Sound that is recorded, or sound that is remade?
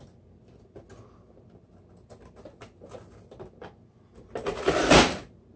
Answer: recorded